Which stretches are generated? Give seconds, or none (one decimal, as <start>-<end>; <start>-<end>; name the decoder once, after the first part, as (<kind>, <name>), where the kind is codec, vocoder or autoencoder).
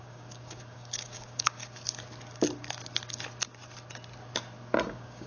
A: 0.0-1.6 (codec, DAC); 4.8-5.3